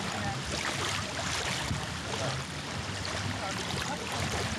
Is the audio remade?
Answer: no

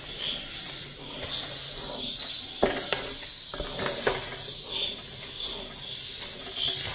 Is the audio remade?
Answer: no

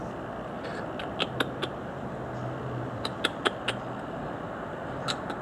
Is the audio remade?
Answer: no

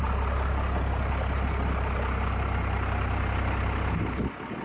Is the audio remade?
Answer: no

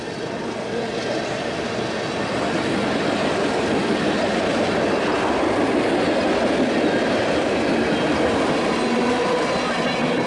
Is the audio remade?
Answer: no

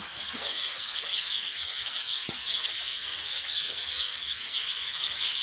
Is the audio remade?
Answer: yes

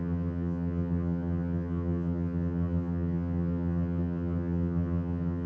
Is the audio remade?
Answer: yes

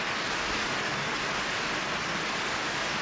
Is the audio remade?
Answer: no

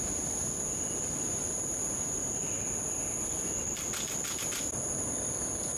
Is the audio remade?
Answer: no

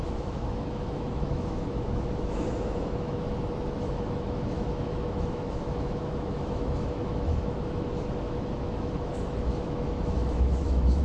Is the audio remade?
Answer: yes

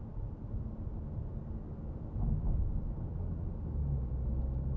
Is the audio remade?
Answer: no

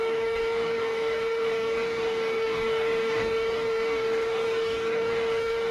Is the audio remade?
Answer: yes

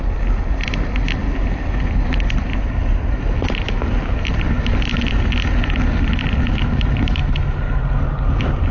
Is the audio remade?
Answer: no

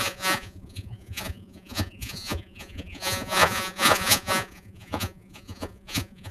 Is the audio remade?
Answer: yes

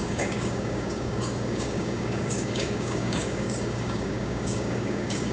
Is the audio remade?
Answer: yes